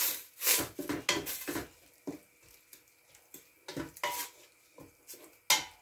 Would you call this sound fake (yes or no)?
no